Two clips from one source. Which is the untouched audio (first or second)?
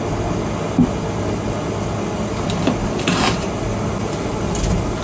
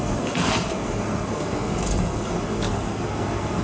first